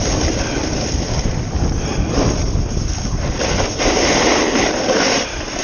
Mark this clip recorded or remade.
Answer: recorded